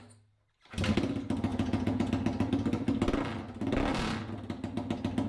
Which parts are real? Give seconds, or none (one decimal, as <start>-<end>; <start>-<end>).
0.0-1.5; 2.1-5.3